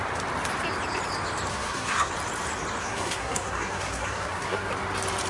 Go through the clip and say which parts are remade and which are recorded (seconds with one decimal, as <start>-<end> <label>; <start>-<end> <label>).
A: 0.0-1.5 recorded; 1.5-2.1 remade; 2.1-2.8 recorded; 2.8-4.7 remade; 4.7-5.3 recorded